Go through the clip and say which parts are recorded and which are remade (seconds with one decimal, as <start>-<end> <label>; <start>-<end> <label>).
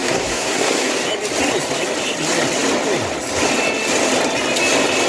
0.0-0.9 remade; 0.9-5.1 recorded